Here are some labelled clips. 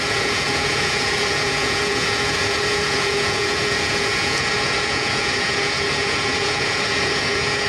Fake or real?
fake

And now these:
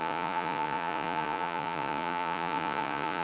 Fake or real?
fake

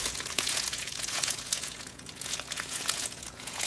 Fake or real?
fake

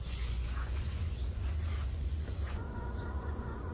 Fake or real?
fake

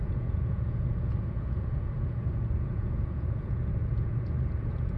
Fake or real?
fake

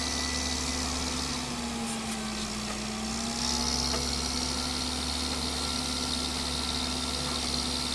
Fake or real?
real